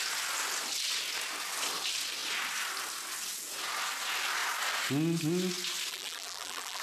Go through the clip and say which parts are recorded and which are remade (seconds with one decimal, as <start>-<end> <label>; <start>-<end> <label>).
0.0-5.9 recorded; 5.9-6.8 remade